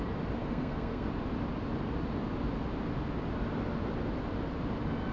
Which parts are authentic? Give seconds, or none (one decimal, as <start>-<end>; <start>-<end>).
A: 0.0-0.4; 1.1-5.1